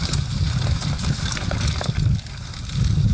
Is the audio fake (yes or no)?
no